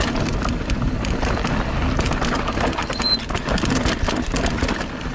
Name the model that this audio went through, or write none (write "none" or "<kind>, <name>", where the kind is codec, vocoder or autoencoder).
none